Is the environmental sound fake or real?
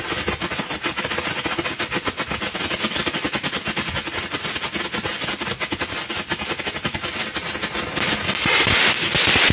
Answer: real